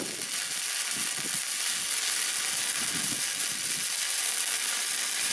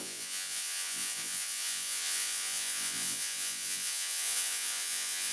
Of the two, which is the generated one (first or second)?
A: second